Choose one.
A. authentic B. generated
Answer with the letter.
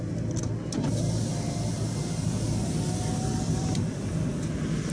A